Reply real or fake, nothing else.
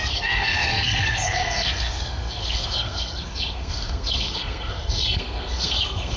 fake